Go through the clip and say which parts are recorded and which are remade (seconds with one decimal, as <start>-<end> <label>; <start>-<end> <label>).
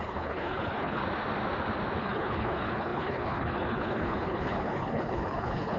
0.0-1.0 remade; 1.0-2.0 recorded; 2.0-5.8 remade